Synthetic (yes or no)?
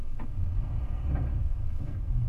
yes